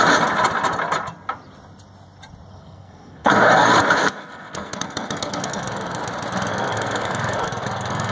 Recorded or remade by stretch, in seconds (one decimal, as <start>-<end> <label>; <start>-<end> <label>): 0.0-2.5 recorded; 2.5-3.3 remade; 3.3-4.0 recorded; 4.0-6.0 remade; 6.0-6.5 recorded; 6.5-8.1 remade